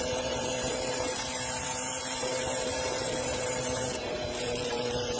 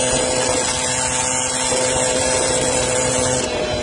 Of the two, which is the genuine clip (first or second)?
second